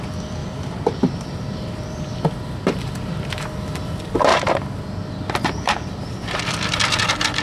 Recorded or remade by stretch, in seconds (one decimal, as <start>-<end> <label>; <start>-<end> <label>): 0.0-0.4 recorded; 0.4-2.0 remade; 2.0-4.3 recorded; 4.3-6.4 remade; 6.4-7.4 recorded